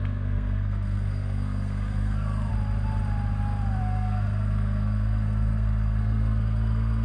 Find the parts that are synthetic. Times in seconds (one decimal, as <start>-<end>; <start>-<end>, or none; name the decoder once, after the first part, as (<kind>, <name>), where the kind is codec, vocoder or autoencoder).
0.0-2.5 (codec, SNAC); 3.8-7.0